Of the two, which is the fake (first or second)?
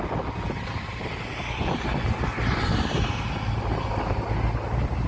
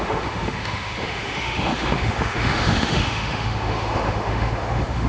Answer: second